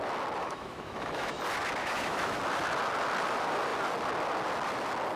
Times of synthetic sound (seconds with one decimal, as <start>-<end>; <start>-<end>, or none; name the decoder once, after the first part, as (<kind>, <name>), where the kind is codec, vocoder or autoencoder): 0.4-1.4 (autoencoder, DAC-VAE); 1.8-2.4

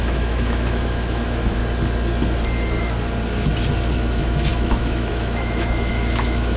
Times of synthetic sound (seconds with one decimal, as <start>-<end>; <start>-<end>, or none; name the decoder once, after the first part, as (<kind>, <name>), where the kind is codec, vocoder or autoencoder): 0.0-1.6 (autoencoder, DAC-VAE); 3.9-6.6

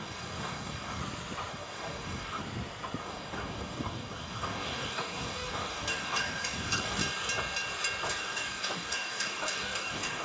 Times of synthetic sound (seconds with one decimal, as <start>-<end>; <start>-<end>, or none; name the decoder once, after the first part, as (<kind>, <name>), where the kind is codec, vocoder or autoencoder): 0.0-1.0 (codec, DAC); 1.5-2.4; 3.0-7.0; 8.1-10.2

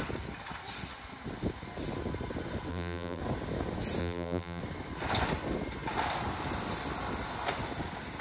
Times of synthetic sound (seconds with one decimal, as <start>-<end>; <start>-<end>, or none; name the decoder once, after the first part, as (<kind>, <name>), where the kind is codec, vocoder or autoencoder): 2.7-3.2 (vocoder, BigVGAN v2); 4.0-4.6